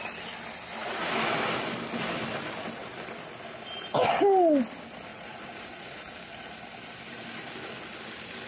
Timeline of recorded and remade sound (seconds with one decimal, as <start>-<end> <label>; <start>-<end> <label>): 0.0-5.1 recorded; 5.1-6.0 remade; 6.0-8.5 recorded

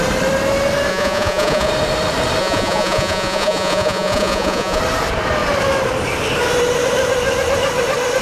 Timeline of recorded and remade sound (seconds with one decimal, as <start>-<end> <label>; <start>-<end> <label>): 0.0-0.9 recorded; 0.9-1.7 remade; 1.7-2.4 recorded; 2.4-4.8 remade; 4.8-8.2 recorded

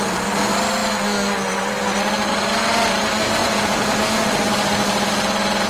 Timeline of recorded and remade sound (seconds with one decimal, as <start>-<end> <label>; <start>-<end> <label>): 0.0-3.4 recorded; 3.4-4.3 remade; 4.3-5.7 recorded

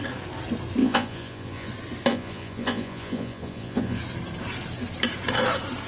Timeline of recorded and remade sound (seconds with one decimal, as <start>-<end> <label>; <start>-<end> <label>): 0.0-0.8 recorded; 0.8-1.7 remade; 1.7-2.1 recorded; 2.1-4.0 remade; 4.0-5.9 recorded

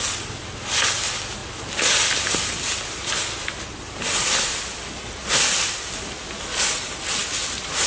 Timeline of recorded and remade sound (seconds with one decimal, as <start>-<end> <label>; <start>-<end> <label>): 0.0-7.9 recorded